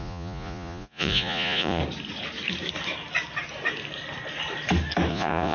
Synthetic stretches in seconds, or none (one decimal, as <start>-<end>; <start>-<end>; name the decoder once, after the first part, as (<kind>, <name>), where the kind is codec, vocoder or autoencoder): 0.0-1.8 (vocoder, Vocos); 5.1-5.5